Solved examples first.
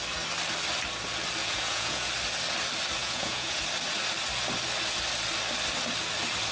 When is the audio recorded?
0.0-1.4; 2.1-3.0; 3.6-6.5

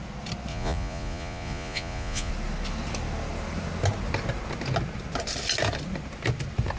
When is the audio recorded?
0.0-0.5; 2.3-6.8

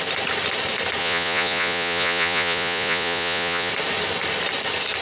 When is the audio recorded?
0.0-1.0; 3.7-5.0

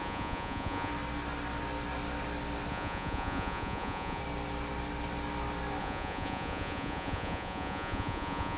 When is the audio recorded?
0.9-2.7; 4.2-5.8

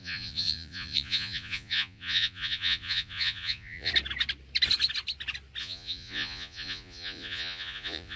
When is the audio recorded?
3.9-5.6

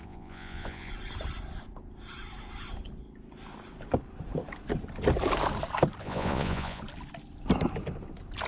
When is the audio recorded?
0.9-6.0; 6.8-8.5